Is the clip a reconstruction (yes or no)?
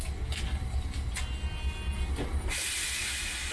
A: no